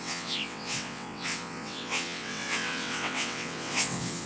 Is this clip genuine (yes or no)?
no